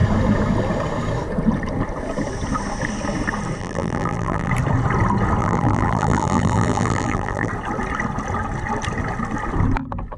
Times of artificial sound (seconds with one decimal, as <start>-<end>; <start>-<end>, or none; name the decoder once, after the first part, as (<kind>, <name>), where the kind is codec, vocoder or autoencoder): 3.6-4.5 (vocoder, BigVGAN v2); 5.4-7.5